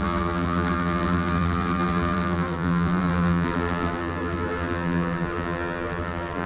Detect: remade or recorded remade